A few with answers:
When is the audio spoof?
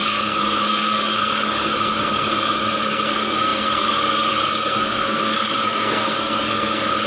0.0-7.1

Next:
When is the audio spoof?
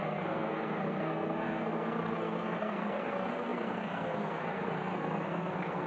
0.0-5.9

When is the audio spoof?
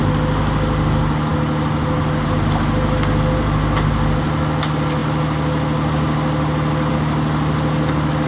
none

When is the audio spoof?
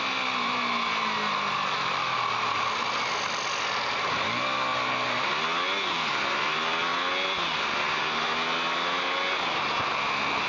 none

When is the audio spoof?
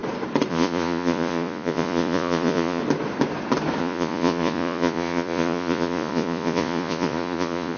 0.5-2.8; 3.8-7.8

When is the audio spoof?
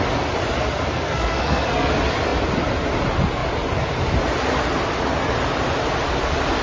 0.9-1.9